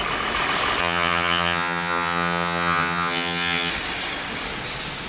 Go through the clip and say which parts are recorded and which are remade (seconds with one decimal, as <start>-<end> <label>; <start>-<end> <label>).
0.0-0.8 recorded; 0.8-3.7 remade; 3.7-5.1 recorded